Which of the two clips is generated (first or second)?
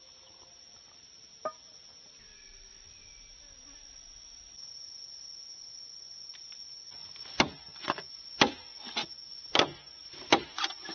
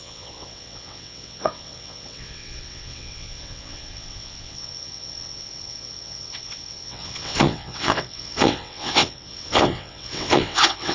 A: second